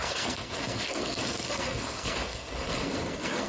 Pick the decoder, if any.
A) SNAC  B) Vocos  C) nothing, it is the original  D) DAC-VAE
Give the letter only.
A